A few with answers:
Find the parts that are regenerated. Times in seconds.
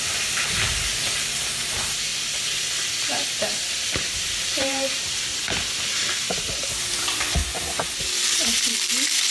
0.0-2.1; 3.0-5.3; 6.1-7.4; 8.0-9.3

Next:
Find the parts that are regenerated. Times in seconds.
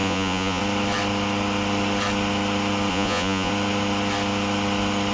0.0-0.6; 2.9-3.5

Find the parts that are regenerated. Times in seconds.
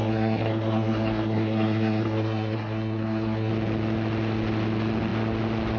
0.0-3.5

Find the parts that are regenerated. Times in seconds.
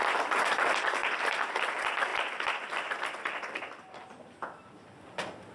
none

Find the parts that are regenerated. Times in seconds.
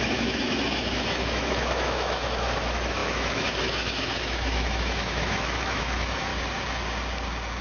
0.0-6.3